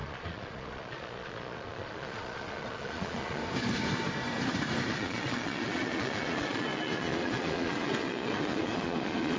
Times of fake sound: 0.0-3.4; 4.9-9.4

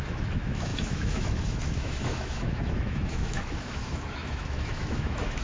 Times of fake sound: 0.0-5.4

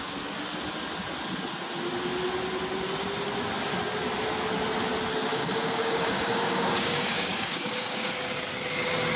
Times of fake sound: 5.3-8.1